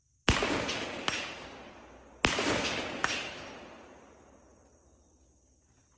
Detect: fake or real real